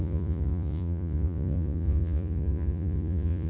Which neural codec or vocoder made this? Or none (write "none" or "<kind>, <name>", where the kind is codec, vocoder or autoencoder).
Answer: vocoder, Vocos